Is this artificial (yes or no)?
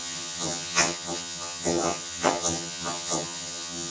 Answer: yes